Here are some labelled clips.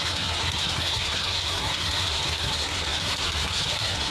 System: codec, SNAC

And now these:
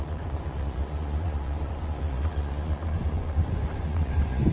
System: vocoder, Vocos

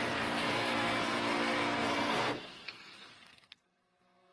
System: codec, SNAC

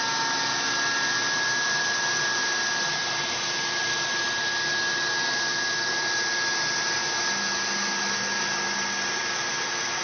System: none